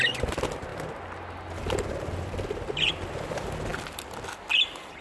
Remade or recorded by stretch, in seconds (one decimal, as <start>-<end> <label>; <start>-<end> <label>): 0.0-5.0 recorded